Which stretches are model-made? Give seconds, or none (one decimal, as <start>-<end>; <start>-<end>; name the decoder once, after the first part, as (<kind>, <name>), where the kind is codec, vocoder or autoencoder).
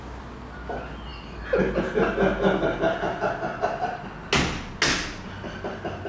none